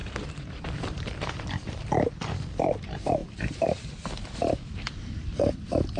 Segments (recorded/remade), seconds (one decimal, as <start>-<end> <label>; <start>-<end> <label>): 0.0-0.6 recorded; 0.6-6.0 remade